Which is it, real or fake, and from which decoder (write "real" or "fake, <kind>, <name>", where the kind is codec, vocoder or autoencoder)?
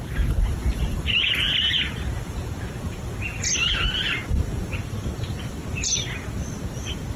fake, vocoder, BigVGAN v2